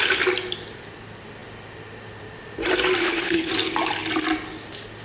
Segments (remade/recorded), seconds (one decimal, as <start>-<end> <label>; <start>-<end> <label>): 0.0-3.0 recorded; 3.0-3.5 remade; 3.5-5.0 recorded